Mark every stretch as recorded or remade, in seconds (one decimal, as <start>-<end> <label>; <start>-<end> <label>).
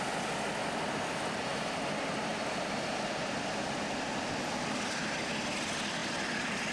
0.0-6.7 recorded